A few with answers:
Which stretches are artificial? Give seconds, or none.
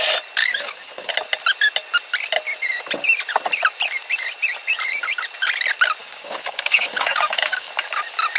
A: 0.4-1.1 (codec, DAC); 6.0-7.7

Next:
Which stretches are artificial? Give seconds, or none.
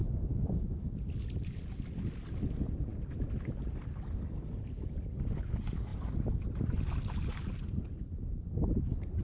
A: 0.0-2.1 (vocoder, BigVGAN v2); 2.9-5.0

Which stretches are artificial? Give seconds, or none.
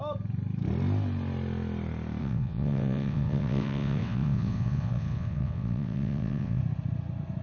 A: 2.2-6.6 (vocoder, WaveNeXt)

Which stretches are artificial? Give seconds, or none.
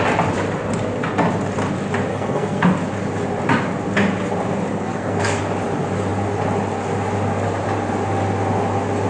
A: 2.1-2.7 (codec, SNAC); 4.7-5.4